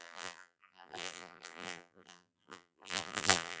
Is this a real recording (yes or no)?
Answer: no